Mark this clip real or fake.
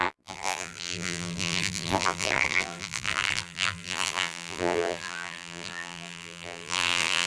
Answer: fake